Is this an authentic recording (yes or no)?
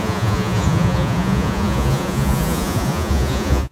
no